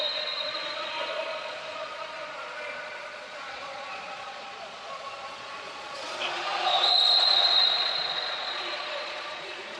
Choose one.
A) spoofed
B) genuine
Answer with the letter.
A